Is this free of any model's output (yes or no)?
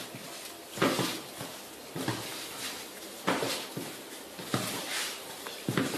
yes